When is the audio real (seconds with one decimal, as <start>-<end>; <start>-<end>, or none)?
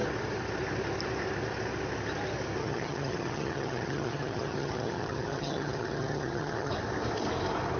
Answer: 0.0-2.6; 6.7-7.8